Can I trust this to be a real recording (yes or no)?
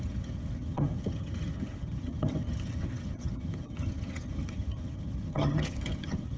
no